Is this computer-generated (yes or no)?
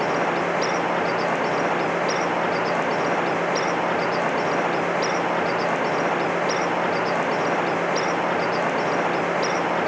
no